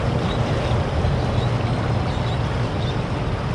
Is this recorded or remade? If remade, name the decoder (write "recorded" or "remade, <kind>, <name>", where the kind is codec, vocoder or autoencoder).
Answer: recorded